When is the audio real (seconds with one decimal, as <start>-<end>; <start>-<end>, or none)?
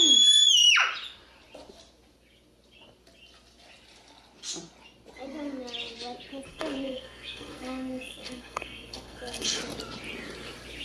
0.0-6.5; 9.6-10.8